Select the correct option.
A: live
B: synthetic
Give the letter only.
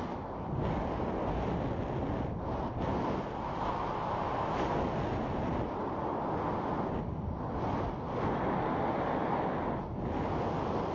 A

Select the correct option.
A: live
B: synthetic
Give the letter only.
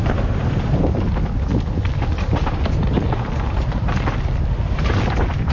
A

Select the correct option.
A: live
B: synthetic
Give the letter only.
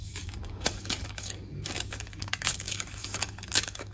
B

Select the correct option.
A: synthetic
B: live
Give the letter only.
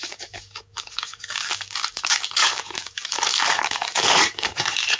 A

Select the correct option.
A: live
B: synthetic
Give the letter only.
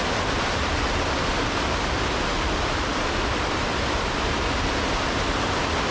A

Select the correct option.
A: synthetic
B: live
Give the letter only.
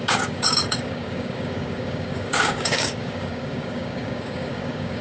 A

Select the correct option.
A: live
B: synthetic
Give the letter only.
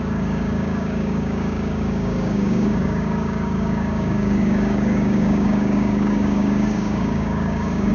B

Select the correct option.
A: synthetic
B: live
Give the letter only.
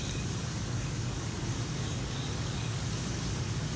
A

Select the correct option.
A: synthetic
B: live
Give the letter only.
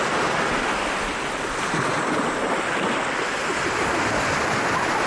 B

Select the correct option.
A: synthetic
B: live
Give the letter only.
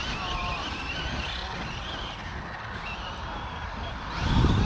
B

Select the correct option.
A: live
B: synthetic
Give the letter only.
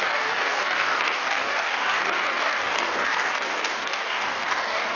B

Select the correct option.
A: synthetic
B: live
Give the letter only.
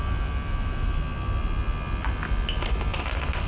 B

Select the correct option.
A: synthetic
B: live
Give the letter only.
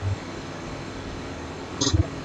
A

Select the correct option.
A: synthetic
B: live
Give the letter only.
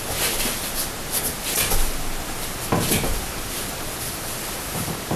B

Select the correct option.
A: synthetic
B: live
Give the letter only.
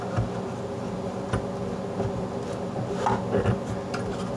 B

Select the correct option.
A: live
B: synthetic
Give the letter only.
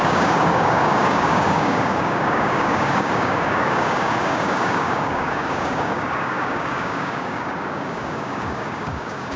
B